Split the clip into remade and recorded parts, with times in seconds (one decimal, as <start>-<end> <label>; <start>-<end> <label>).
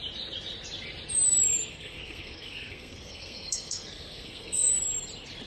0.0-1.7 recorded; 1.7-4.7 remade; 4.7-5.5 recorded